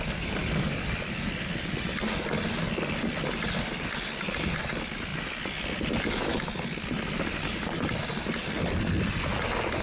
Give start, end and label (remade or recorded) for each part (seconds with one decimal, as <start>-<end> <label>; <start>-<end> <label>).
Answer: 0.0-9.8 recorded